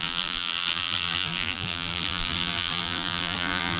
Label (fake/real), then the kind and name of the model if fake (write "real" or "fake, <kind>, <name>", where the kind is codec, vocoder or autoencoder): fake, vocoder, BigVGAN v2